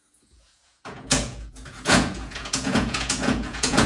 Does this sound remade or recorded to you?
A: remade